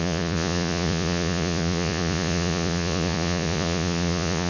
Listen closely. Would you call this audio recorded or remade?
remade